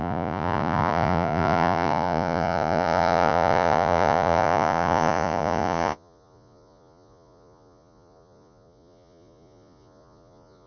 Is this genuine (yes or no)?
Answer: no